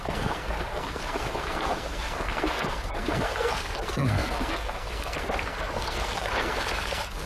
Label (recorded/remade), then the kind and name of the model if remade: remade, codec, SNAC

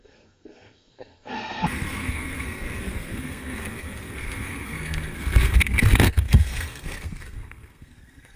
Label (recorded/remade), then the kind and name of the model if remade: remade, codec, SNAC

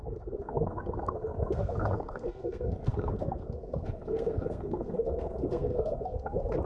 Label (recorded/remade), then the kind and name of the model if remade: remade, codec, SNAC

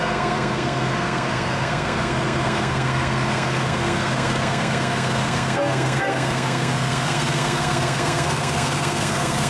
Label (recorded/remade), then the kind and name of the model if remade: remade, codec, SNAC